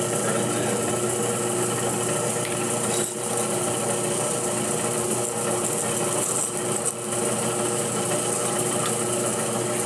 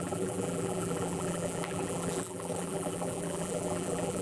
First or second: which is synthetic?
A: second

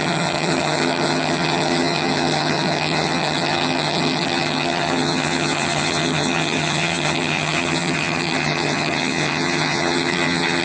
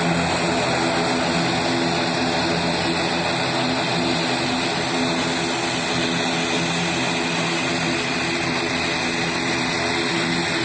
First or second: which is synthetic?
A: first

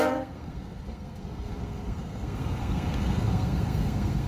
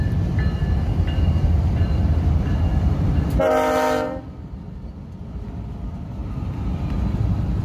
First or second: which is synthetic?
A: first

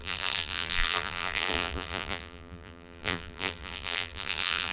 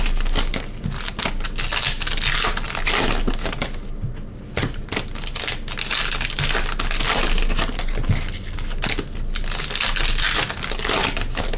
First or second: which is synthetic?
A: first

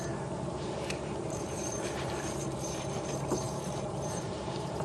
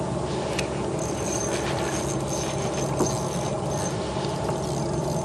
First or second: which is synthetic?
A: first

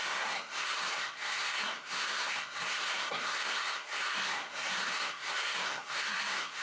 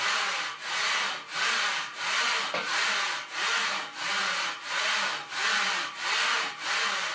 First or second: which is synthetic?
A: first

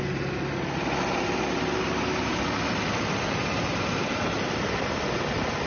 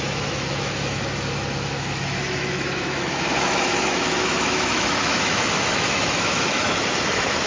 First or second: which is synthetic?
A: second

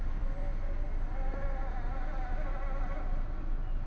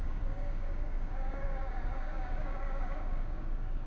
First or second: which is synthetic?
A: second